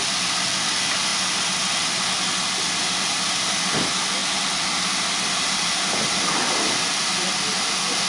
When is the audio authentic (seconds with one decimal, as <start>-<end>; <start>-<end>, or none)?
0.0-8.1